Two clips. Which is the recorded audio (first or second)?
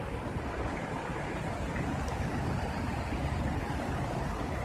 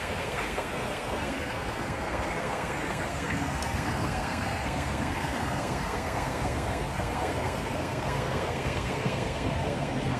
first